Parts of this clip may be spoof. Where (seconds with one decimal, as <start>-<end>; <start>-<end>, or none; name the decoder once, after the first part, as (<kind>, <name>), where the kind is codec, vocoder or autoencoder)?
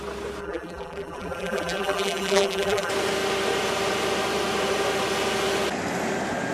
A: 0.4-2.9 (vocoder, BigVGAN v2)